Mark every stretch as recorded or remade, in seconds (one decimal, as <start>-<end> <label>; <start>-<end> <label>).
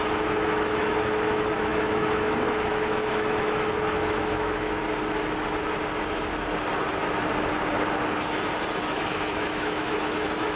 0.0-4.8 remade; 4.8-8.9 recorded; 8.9-10.6 remade